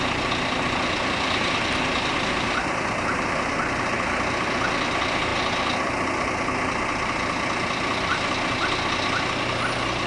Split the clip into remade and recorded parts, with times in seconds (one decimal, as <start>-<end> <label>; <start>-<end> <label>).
0.0-2.1 recorded; 2.1-3.5 remade; 3.5-10.1 recorded